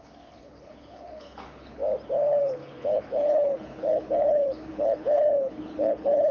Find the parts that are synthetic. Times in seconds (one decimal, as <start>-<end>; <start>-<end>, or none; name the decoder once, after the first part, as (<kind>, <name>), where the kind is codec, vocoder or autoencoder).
0.0-1.8 (codec, HILCodec); 2.4-6.3